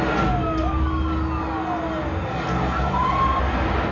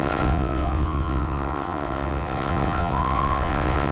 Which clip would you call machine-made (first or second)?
second